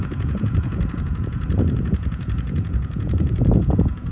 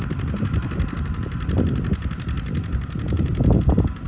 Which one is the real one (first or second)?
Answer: second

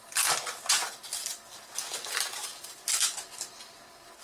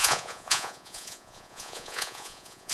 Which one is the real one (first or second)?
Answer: first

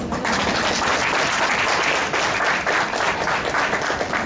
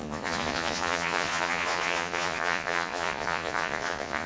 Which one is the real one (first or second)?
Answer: first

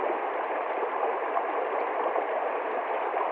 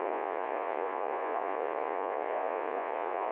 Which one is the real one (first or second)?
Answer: first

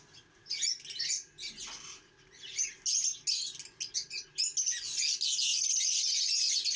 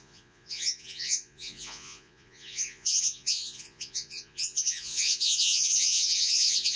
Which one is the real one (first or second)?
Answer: first